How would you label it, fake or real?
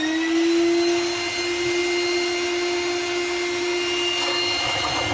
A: real